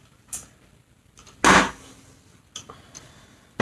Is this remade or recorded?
recorded